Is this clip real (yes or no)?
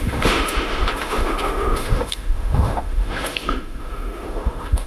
no